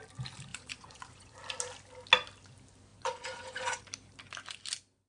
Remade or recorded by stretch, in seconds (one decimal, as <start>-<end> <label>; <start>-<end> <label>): 0.0-0.5 recorded; 0.5-1.4 remade; 1.4-2.9 recorded; 2.9-3.8 remade; 3.8-5.1 recorded

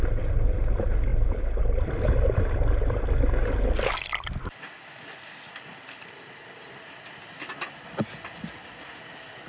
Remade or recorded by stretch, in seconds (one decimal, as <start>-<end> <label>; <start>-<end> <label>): 0.0-9.5 recorded

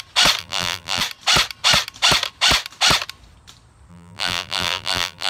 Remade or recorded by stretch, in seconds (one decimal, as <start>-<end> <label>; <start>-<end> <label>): 0.0-0.4 recorded; 0.4-1.0 remade; 1.0-3.9 recorded; 3.9-5.3 remade

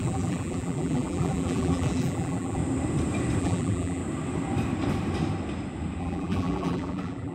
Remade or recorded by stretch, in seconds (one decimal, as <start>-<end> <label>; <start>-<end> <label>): 0.0-2.6 remade; 2.6-3.4 recorded; 3.4-4.0 remade; 4.0-6.0 recorded; 6.0-7.3 remade

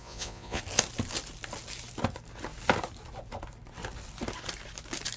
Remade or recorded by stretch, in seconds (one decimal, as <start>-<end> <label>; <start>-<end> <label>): 0.0-0.6 remade; 0.6-5.2 recorded

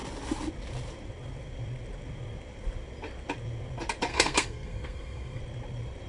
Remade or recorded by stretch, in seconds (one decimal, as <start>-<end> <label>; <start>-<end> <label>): 0.0-4.1 recorded; 4.1-5.4 remade; 5.4-6.1 recorded

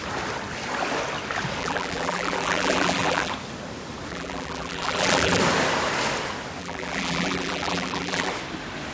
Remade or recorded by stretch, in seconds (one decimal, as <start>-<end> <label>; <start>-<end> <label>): 0.0-1.6 recorded; 1.6-3.3 remade; 3.3-4.1 recorded; 4.1-5.4 remade; 5.4-6.6 recorded; 6.6-8.3 remade; 8.3-8.9 recorded

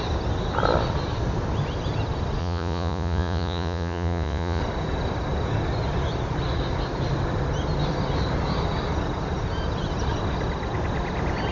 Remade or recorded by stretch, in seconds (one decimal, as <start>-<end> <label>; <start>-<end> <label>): 0.0-2.4 recorded; 2.4-4.6 remade; 4.6-11.5 recorded